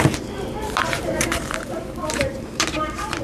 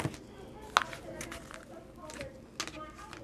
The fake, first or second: first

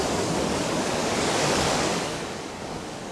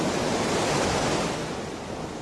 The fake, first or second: first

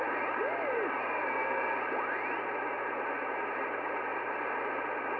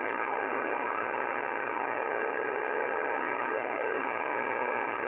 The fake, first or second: second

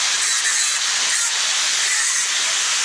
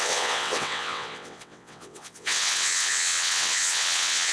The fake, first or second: second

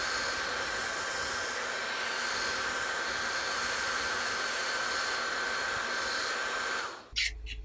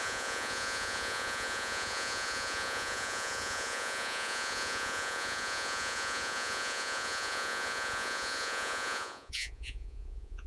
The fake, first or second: second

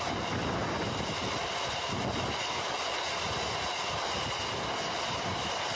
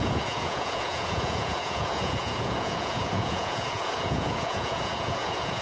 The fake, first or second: second